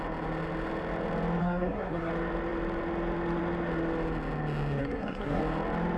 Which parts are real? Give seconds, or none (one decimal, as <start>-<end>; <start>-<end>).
0.0-1.4; 2.1-4.8; 5.4-6.0